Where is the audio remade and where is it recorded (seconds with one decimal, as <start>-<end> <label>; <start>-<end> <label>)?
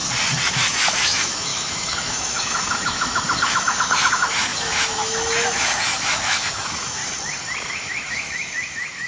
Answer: 0.0-0.5 recorded; 0.5-7.0 remade; 7.0-7.7 recorded; 7.7-9.1 remade